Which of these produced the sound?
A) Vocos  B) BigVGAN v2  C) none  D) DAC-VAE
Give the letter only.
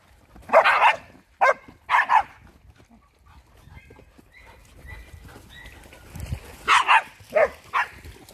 C